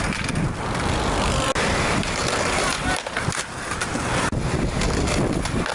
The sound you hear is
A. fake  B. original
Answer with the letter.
B